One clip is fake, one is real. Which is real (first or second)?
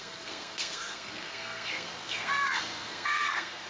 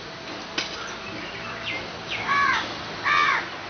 second